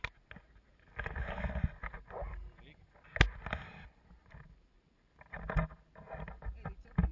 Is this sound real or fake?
real